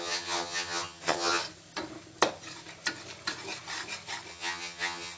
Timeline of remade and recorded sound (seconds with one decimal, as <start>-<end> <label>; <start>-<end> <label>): 0.0-1.4 remade; 1.4-4.3 recorded; 4.3-5.2 remade